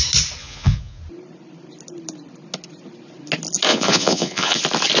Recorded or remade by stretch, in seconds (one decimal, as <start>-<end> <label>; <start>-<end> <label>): 0.0-0.4 recorded; 0.4-1.0 remade; 1.0-3.7 recorded; 3.7-4.6 remade; 4.6-5.0 recorded